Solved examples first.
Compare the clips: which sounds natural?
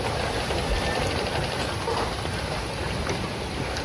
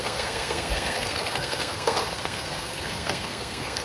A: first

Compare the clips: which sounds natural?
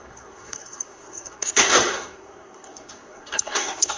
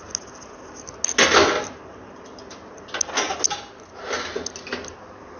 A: second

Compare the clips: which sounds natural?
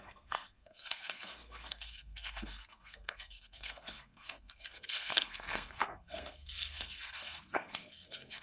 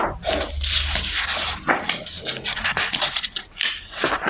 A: second